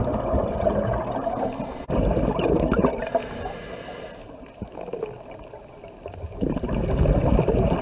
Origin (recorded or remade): recorded